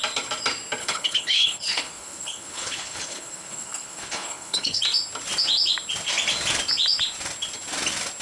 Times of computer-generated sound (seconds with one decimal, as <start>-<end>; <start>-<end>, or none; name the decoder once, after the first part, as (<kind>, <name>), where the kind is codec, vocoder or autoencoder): 0.8-4.8 (codec, HILCodec)